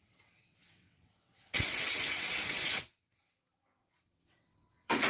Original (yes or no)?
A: no